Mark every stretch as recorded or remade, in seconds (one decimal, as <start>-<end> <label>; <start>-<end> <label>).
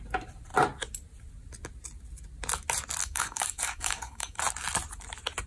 0.0-3.0 recorded; 3.0-4.4 remade; 4.4-5.5 recorded